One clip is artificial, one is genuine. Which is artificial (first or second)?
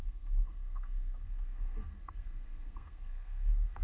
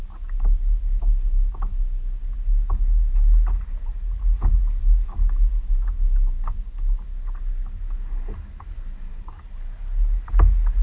first